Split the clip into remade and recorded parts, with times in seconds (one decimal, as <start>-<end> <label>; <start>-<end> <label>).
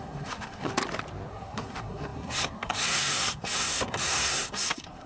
0.0-0.7 remade; 0.7-1.3 recorded; 1.3-5.1 remade